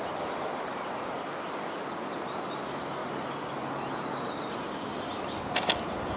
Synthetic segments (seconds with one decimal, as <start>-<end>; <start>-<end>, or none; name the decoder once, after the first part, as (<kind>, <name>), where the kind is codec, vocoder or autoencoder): 3.0-3.5 (vocoder, BigVGAN v2)